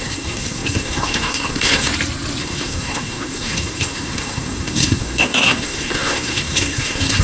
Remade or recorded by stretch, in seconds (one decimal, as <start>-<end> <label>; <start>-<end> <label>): 0.0-1.9 remade; 1.9-2.4 recorded; 2.4-7.2 remade